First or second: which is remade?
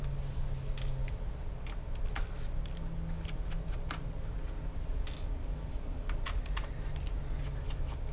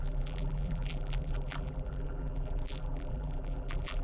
second